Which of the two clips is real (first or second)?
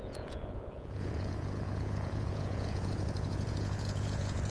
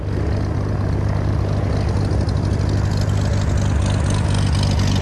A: second